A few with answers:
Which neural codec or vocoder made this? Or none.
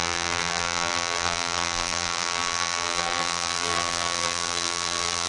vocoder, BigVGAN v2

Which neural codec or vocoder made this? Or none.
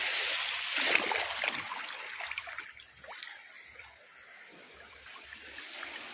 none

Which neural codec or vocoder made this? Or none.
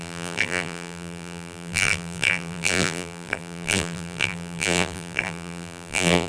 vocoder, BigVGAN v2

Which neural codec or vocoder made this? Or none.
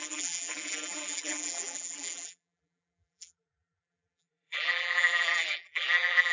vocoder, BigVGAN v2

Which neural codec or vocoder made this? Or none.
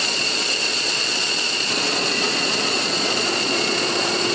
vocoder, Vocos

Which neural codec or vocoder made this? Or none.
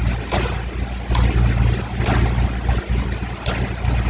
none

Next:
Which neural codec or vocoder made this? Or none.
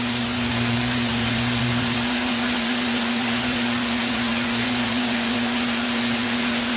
vocoder, Vocos